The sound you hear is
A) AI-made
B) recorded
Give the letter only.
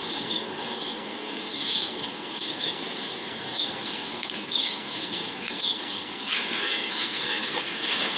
A